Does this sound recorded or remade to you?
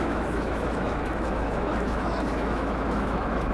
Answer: remade